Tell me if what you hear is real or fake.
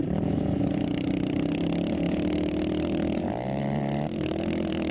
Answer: real